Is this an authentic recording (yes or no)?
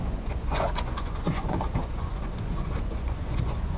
no